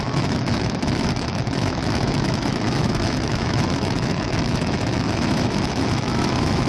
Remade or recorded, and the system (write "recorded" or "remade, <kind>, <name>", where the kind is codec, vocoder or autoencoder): remade, autoencoder, DAC-VAE